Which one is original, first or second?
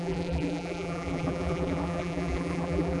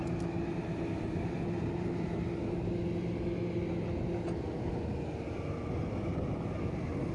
second